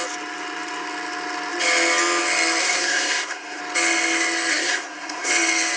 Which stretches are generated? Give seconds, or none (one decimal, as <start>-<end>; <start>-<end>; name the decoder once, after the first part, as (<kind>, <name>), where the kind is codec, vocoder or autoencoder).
2.6-3.6 (codec, SNAC); 4.5-5.3